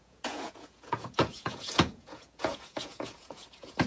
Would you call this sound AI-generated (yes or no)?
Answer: yes